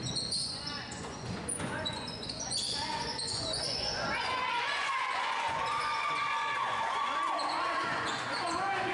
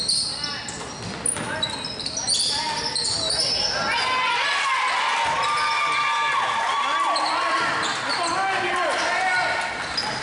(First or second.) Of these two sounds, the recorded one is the second